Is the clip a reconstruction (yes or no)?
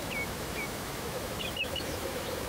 yes